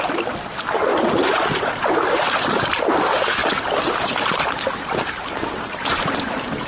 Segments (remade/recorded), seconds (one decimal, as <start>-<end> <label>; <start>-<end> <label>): 0.0-0.9 recorded; 0.9-2.9 remade; 2.9-3.4 recorded; 3.4-4.0 remade; 4.0-6.7 recorded